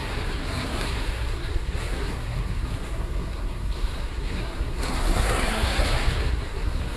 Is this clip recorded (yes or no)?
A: no